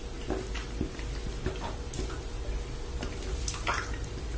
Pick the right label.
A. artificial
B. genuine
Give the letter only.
B